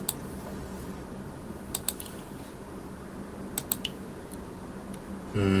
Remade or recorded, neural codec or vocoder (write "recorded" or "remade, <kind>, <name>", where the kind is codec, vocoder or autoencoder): recorded